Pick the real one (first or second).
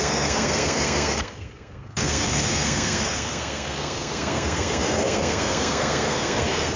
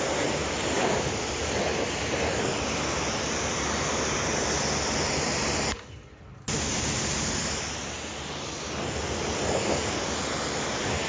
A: second